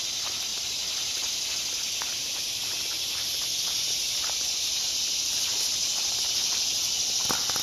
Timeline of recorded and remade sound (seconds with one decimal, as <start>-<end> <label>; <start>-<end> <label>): 0.0-0.5 recorded; 0.5-1.5 remade; 1.5-2.2 recorded; 2.2-4.9 remade; 4.9-7.6 recorded